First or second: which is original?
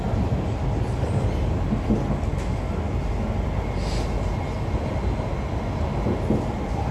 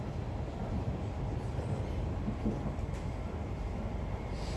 first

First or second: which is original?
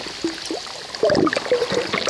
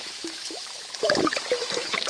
first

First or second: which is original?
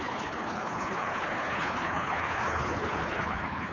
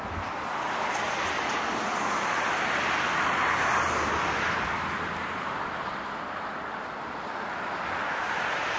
second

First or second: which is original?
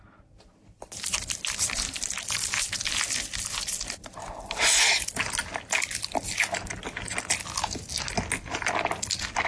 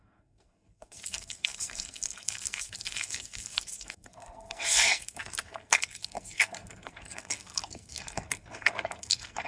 first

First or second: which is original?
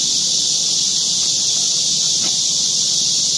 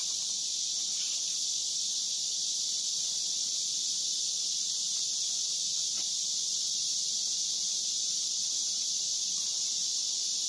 first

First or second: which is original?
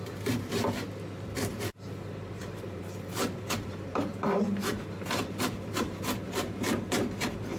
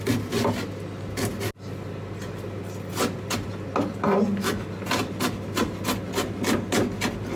second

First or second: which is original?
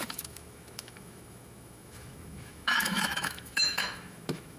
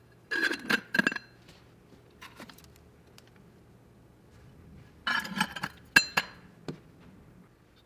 second